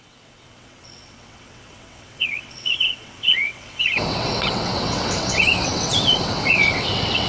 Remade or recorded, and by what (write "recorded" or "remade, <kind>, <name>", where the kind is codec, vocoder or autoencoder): remade, vocoder, WaveNeXt